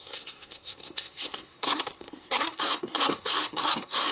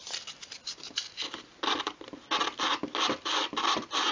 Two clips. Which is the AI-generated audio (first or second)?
first